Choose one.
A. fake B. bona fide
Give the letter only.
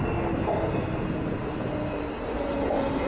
B